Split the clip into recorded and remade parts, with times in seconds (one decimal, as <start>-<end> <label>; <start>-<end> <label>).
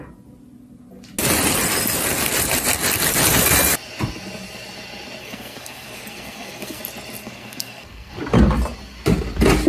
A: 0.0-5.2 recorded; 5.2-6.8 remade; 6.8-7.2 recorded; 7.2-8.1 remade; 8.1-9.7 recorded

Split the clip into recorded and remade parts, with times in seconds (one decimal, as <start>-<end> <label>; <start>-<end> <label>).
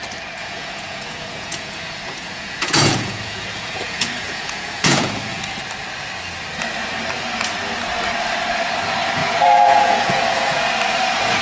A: 0.0-0.4 recorded; 0.4-5.6 remade; 5.6-9.2 recorded; 9.2-10.7 remade; 10.7-11.4 recorded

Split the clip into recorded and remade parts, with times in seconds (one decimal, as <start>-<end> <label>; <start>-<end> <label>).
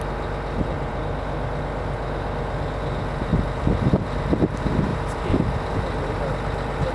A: 0.0-3.3 recorded; 3.3-4.0 remade; 4.0-4.9 recorded; 4.9-5.7 remade; 5.7-6.9 recorded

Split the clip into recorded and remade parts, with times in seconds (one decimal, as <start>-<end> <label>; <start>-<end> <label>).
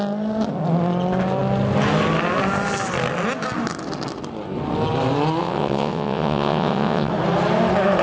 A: 0.0-5.4 recorded; 5.4-7.1 remade; 7.1-8.0 recorded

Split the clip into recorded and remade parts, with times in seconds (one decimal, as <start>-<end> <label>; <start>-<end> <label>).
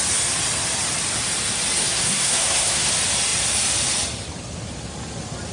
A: 0.0-1.8 recorded; 1.8-2.9 remade; 2.9-5.5 recorded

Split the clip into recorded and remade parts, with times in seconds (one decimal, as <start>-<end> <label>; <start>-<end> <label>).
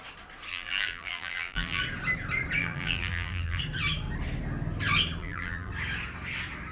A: 0.0-0.5 recorded; 0.5-1.8 remade; 1.8-2.6 recorded; 2.6-3.6 remade; 3.6-5.2 recorded; 5.2-5.7 remade; 5.7-6.7 recorded